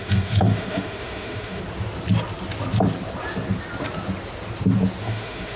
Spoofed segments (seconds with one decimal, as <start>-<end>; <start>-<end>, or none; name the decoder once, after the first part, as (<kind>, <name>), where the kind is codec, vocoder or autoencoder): 0.0-1.6 (autoencoder, DAC-VAE); 5.0-5.6